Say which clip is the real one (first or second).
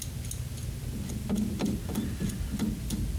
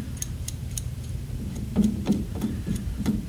first